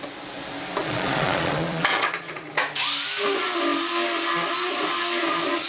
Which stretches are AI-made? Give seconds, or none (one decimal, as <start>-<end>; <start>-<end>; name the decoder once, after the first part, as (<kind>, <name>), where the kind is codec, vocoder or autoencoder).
0.8-2.5 (vocoder, Vocos)